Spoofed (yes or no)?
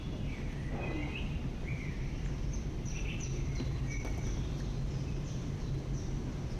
yes